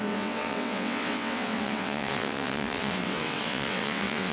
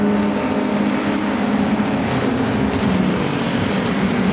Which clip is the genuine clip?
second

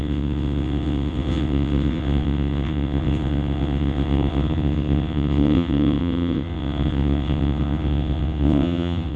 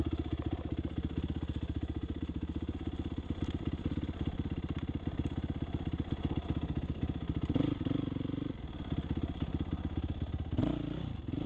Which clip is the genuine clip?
second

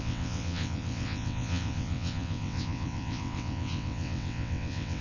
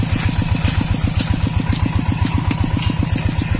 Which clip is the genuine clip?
second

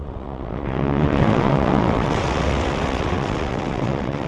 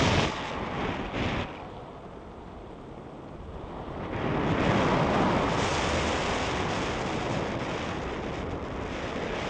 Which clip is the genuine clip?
second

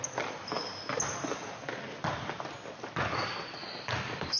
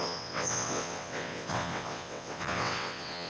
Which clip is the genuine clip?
first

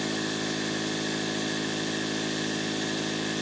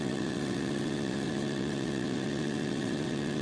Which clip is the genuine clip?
first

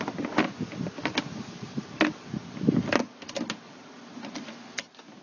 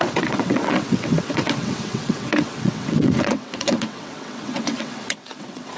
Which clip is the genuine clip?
first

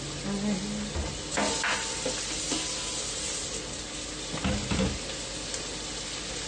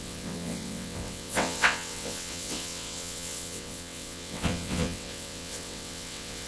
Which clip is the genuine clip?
first